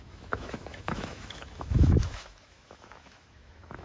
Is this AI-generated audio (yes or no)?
yes